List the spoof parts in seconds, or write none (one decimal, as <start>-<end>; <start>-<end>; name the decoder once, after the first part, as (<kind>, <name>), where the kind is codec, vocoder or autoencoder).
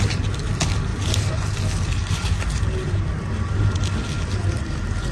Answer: none